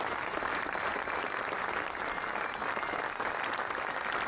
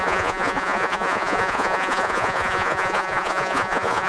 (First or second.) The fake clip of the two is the second